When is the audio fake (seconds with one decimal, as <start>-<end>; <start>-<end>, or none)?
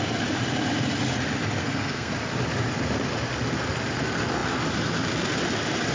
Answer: 1.6-2.1